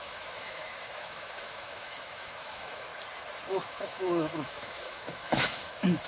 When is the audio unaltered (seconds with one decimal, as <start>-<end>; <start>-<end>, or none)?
2.9-3.5